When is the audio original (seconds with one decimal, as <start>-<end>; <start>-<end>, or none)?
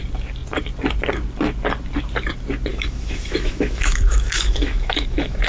0.0-2.7